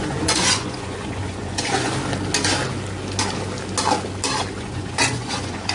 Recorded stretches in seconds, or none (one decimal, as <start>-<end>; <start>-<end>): 1.9-4.6